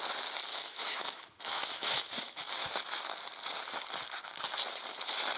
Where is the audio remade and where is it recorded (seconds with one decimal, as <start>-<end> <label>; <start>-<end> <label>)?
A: 0.0-0.5 recorded; 0.5-3.1 remade; 3.1-5.4 recorded